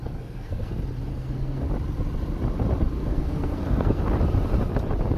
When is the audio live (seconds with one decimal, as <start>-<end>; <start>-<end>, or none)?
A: 0.7-1.1; 1.7-3.0; 4.0-5.2